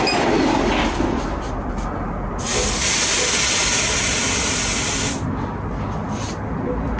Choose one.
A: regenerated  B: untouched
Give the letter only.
B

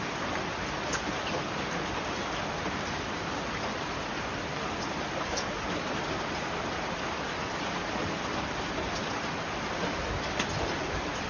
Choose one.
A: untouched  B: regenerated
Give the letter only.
A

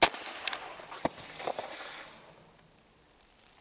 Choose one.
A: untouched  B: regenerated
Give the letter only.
A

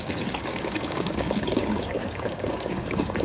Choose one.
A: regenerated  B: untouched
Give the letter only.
A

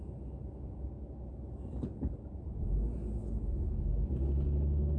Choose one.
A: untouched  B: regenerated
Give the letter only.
A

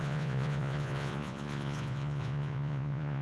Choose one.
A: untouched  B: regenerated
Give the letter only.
B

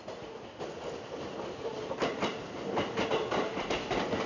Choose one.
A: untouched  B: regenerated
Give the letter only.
A